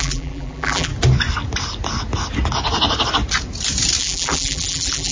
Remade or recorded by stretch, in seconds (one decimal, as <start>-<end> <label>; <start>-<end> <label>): 0.0-0.9 remade; 0.9-4.0 recorded; 4.0-5.1 remade